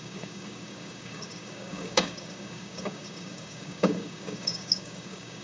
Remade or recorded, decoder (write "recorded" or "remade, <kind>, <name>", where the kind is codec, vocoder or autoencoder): remade, codec, DAC